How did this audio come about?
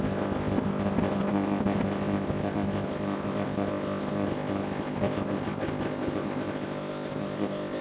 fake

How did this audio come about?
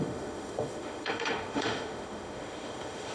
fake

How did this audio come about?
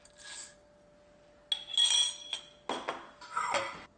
real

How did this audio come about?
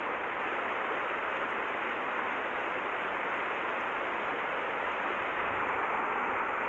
real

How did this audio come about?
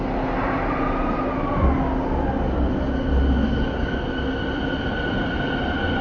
real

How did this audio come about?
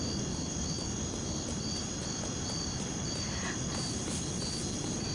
real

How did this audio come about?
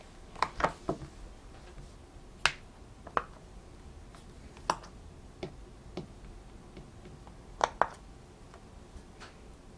real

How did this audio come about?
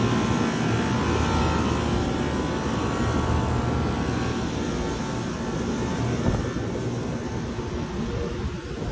real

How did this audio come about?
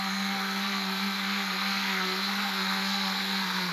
fake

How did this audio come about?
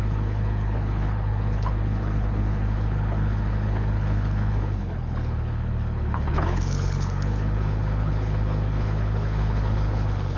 fake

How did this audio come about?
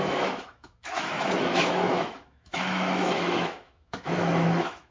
fake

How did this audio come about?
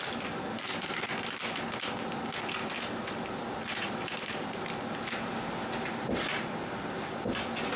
real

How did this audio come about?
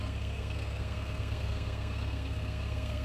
fake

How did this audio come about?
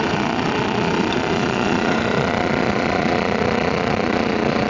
fake